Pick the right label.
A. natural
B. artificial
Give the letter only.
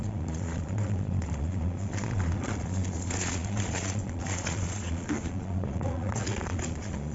B